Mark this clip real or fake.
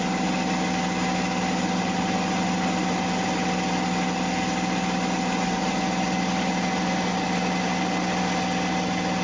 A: real